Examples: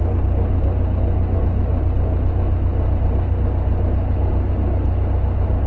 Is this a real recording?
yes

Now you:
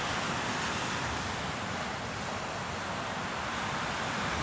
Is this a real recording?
yes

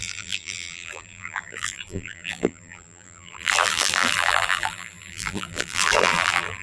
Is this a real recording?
no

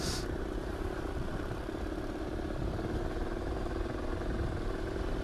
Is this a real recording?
no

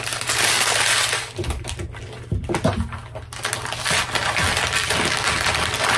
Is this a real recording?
yes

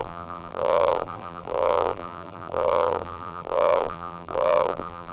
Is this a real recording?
no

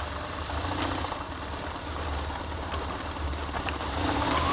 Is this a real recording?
no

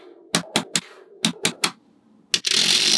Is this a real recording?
yes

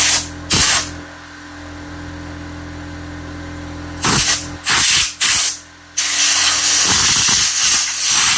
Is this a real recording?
yes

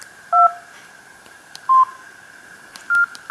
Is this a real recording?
no